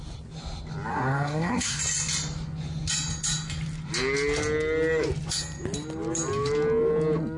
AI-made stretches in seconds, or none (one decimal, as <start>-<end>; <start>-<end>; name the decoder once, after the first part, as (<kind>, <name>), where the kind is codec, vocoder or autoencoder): 0.9-1.8 (codec, SNAC)